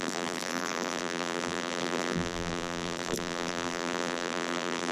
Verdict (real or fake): fake